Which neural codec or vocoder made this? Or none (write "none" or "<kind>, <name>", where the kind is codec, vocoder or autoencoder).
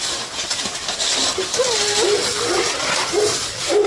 none